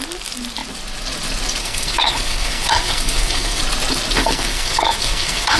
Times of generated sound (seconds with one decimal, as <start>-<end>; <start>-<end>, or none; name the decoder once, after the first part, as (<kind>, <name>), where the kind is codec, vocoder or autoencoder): 1.6-3.6 (codec, SNAC); 4.2-5.6